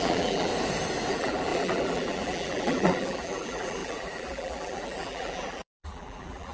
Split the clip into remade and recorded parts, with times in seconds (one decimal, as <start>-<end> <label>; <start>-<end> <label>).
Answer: 0.0-0.5 remade; 0.5-1.1 recorded; 1.1-6.5 remade